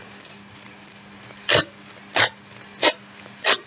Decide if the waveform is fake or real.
real